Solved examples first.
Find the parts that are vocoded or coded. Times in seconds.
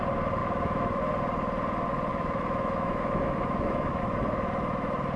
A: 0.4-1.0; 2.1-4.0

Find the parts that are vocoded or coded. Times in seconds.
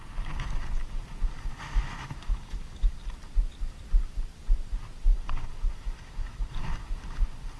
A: 1.5-2.9; 5.1-6.5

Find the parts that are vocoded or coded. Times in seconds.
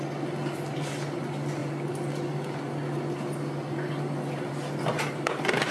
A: none